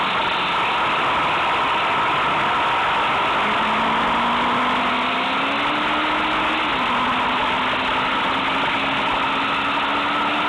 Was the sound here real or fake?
real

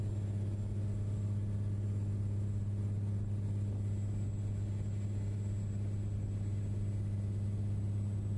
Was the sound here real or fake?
real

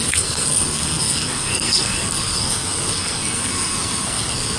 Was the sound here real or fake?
fake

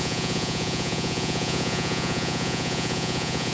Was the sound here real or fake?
fake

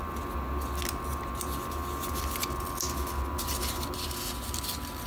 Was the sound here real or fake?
real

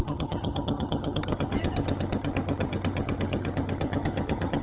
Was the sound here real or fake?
fake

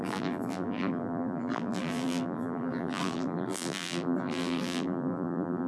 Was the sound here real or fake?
fake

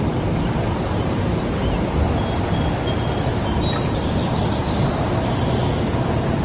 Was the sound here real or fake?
real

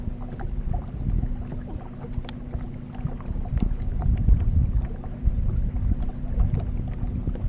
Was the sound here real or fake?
real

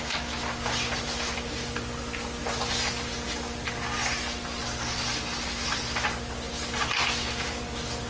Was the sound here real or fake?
real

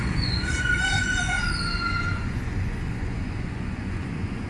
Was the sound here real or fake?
fake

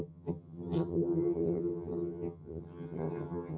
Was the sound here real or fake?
fake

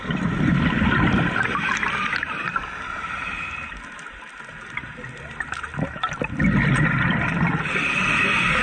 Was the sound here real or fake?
real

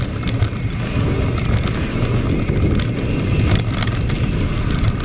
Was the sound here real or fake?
real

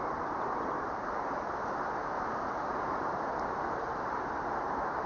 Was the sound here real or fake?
fake